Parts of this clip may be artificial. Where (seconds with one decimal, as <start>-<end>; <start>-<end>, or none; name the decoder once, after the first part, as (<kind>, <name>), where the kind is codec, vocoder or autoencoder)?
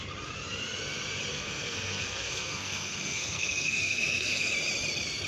1.3-4.5 (codec, SNAC)